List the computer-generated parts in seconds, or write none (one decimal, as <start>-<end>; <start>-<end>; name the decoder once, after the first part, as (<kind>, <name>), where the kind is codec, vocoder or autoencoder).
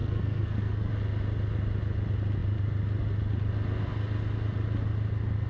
0.0-0.9 (codec, SNAC)